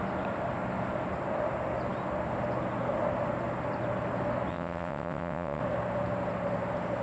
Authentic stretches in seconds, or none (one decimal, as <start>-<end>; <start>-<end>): 0.0-4.5; 5.6-7.0